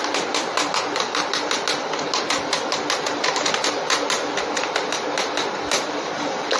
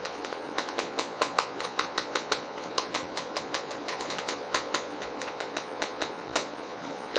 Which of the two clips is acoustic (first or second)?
first